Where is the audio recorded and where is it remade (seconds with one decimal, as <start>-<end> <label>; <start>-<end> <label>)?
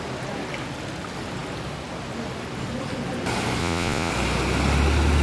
0.0-3.6 recorded; 3.6-4.1 remade; 4.1-5.2 recorded